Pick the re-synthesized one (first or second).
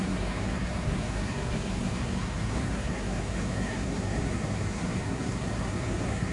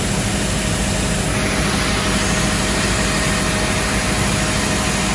first